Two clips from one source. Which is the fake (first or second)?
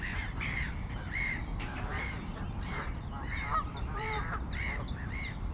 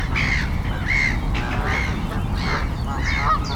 first